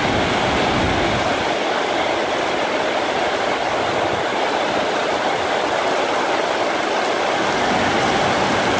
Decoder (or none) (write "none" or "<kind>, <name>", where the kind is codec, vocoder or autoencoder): none